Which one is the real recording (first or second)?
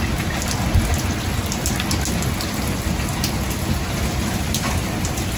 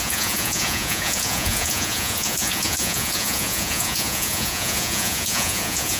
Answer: first